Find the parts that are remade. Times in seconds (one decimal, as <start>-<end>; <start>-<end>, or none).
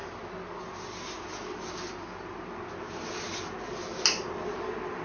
none